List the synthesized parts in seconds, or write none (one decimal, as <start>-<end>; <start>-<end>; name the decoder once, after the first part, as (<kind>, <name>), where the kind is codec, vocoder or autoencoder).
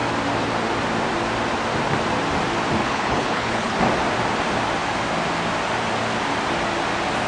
2.8-3.8 (codec, HILCodec)